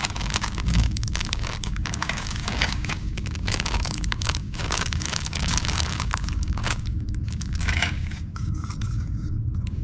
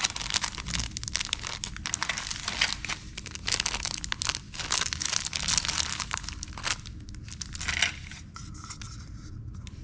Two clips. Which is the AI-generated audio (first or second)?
first